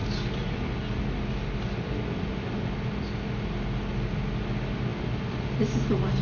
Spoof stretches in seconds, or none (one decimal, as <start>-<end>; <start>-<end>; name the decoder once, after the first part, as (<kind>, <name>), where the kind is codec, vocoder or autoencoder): none